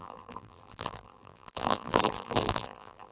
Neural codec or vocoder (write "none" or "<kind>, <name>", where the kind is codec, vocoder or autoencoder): vocoder, BigVGAN v2